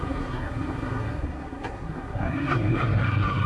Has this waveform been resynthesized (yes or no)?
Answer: yes